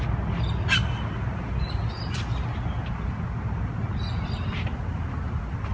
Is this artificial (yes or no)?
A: no